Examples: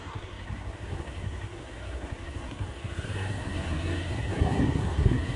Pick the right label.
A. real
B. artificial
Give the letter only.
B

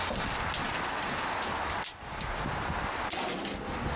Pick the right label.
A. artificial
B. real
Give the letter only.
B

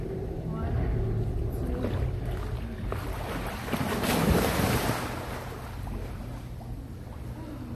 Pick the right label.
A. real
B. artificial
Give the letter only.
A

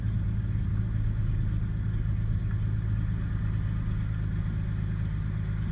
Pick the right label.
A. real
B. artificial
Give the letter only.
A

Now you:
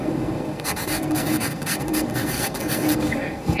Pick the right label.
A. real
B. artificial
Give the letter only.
B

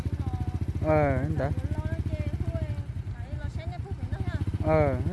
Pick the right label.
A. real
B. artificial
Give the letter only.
A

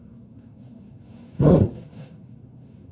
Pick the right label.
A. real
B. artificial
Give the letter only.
B